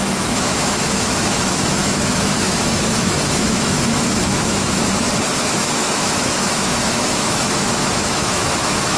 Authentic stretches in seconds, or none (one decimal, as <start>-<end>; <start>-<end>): 4.8-5.3